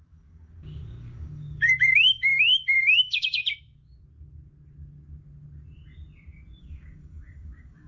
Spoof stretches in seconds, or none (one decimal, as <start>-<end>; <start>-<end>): 0.0-3.4; 6.6-7.9